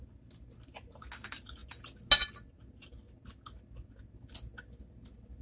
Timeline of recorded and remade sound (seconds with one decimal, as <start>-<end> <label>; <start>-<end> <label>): 0.0-5.4 recorded